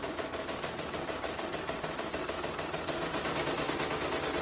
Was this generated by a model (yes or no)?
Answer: no